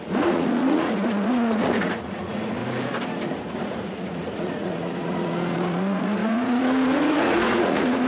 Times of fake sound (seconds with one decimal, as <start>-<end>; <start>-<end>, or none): 0.0-2.6; 3.1-8.1